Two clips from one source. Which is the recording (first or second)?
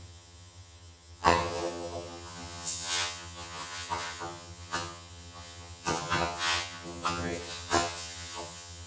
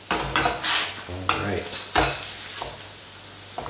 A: second